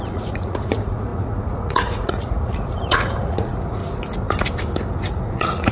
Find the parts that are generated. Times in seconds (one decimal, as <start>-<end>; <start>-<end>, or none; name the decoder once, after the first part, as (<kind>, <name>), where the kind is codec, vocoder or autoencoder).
0.0-3.8 (vocoder, Vocos); 5.1-5.7

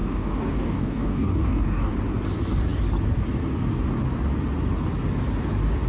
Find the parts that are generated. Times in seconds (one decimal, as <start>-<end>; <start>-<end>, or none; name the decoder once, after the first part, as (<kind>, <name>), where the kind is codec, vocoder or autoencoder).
0.0-1.9 (codec, DAC)

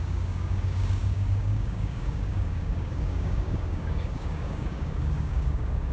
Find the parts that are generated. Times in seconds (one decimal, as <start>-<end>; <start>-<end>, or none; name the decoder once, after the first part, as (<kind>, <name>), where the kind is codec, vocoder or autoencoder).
0.0-5.9 (codec, DAC)

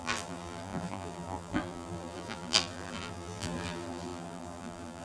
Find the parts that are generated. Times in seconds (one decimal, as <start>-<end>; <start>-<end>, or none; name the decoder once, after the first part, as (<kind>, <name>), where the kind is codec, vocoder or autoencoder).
0.0-5.0 (vocoder, BigVGAN v2)

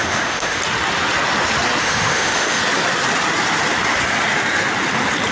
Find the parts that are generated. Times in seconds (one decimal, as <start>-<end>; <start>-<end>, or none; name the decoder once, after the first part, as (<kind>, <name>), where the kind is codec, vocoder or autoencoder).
0.0-0.6 (autoencoder, DAC-VAE); 1.8-2.6

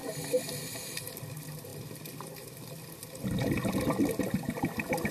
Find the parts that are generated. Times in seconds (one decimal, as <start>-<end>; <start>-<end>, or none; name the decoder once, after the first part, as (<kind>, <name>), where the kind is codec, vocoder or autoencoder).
none